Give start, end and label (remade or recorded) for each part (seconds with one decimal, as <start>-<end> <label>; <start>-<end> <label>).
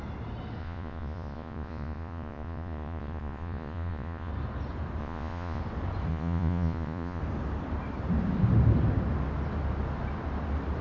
0.0-0.6 recorded; 0.6-4.3 remade; 4.3-5.0 recorded; 5.0-5.6 remade; 5.6-6.1 recorded; 6.1-7.2 remade; 7.2-10.8 recorded